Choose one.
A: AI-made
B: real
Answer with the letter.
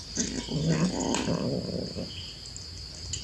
B